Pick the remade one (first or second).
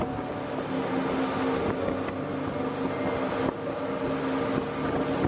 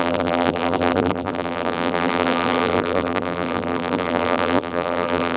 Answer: second